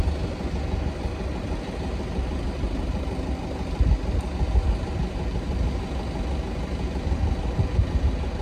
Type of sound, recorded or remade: recorded